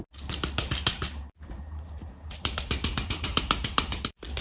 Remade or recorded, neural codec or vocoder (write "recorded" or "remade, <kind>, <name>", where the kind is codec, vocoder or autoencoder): remade, vocoder, BigVGAN v2